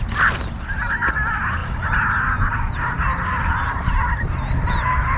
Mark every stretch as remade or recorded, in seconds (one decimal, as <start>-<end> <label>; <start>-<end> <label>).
0.0-5.2 recorded